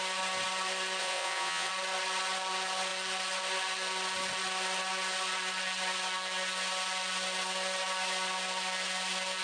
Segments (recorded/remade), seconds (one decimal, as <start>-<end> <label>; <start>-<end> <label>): 0.0-1.0 recorded; 1.0-1.7 remade; 1.7-9.4 recorded